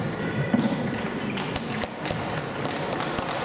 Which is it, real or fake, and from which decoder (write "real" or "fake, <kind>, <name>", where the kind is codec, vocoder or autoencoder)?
real